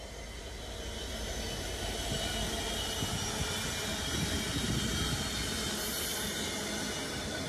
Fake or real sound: real